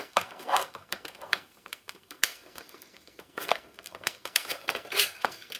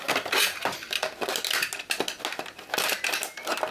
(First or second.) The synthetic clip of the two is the first